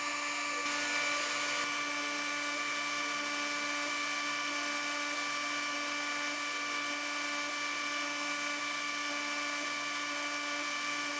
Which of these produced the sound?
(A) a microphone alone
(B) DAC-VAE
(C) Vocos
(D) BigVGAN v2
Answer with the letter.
A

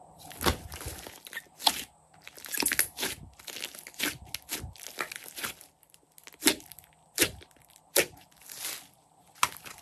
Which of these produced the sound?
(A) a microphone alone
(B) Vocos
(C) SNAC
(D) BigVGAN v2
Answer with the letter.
A